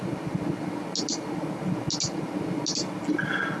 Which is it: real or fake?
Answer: real